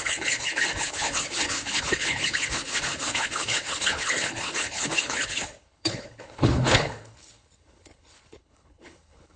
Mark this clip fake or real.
fake